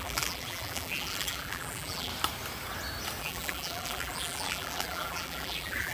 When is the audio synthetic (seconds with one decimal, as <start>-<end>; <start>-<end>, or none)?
0.0-2.1; 3.2-5.9